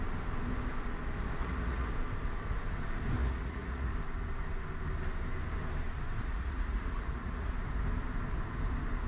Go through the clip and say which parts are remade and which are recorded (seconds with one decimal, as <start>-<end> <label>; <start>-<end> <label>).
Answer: 0.0-1.4 recorded; 1.4-1.9 remade; 1.9-3.2 recorded; 3.2-3.9 remade; 3.9-6.2 recorded; 6.2-7.5 remade; 7.5-9.1 recorded